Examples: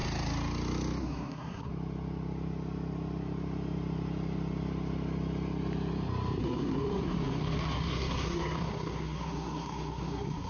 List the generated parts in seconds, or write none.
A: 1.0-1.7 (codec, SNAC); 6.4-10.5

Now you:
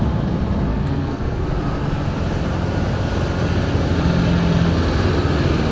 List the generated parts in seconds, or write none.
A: 0.7-1.4 (codec, SNAC)

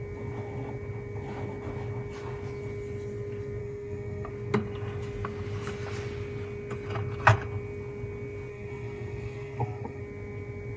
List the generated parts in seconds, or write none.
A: 3.6-4.3 (codec, SNAC); 8.5-10.0

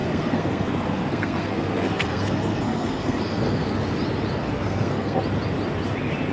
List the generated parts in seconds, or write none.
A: 0.0-3.8 (codec, SNAC); 4.4-5.2

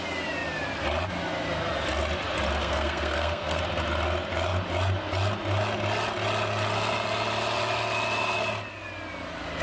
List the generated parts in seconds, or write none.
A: 2.6-3.6 (codec, SNAC)

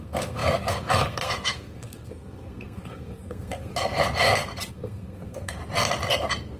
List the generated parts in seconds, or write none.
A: 0.0-3.7 (codec, SNAC); 4.7-5.6

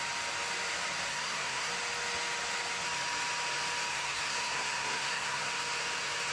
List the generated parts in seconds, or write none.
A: 1.1-1.7 (codec, SNAC); 3.9-5.5